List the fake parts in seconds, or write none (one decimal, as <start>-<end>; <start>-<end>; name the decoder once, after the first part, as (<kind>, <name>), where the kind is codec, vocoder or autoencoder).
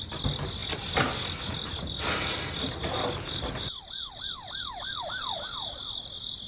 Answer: none